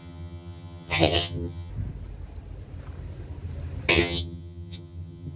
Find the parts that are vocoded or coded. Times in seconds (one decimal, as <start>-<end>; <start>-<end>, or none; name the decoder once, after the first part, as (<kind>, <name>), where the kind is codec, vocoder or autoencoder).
0.0-1.7 (vocoder, HiFi-GAN); 3.9-5.4